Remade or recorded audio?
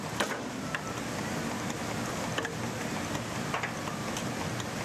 recorded